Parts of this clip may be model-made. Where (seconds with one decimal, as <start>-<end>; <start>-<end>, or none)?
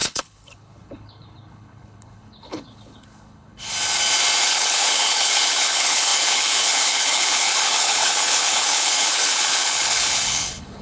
0.0-3.7; 4.4-10.8